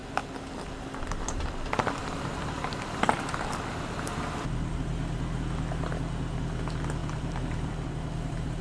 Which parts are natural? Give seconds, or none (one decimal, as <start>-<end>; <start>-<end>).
0.0-2.0; 3.3-7.0